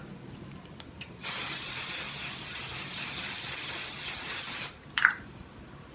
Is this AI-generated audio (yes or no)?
no